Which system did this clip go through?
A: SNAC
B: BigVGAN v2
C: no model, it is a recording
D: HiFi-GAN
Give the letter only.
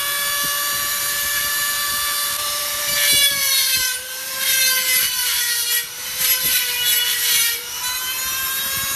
B